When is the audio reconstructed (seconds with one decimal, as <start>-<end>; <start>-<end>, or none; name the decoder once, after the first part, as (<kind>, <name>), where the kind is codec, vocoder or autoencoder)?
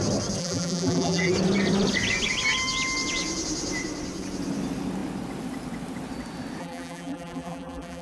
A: 0.4-1.3 (vocoder, BigVGAN v2); 6.6-8.0